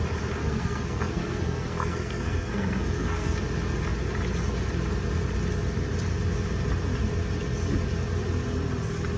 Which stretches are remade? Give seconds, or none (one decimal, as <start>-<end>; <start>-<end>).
0.4-3.4